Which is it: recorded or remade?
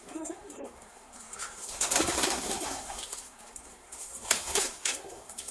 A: remade